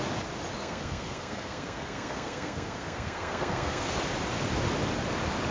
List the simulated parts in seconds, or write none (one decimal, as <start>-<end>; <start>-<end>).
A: 0.6-3.9